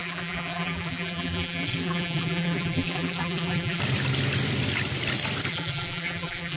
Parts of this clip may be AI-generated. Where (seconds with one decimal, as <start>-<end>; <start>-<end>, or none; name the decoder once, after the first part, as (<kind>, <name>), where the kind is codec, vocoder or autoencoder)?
0.0-3.8 (vocoder, BigVGAN v2); 5.5-6.6